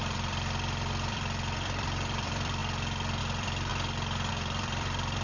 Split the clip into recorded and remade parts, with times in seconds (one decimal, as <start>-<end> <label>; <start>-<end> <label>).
0.0-2.6 remade; 2.6-3.2 recorded; 3.2-3.7 remade; 3.7-4.3 recorded; 4.3-5.2 remade